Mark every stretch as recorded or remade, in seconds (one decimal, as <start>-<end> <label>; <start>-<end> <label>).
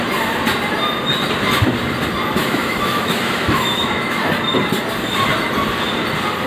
0.0-2.4 recorded; 2.4-4.3 remade; 4.3-6.5 recorded